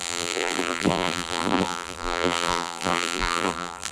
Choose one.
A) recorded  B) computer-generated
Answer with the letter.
B